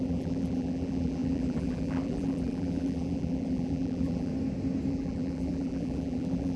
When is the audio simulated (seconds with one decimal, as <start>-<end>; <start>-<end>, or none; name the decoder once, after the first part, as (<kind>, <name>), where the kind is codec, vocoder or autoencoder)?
0.0-4.3 (vocoder, BigVGAN v2); 4.9-6.6